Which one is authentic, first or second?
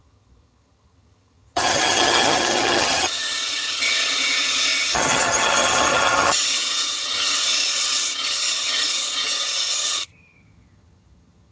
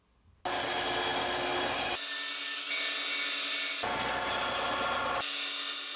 second